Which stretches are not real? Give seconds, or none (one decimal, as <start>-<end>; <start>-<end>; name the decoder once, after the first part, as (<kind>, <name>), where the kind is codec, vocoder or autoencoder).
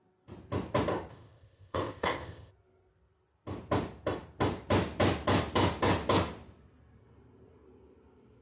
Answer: 1.1-2.5 (codec, ZipCodec)